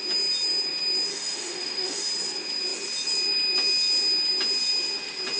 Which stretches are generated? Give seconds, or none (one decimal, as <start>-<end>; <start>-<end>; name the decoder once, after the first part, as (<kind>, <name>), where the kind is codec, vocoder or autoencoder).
1.1-2.1 (autoencoder, DAC-VAE)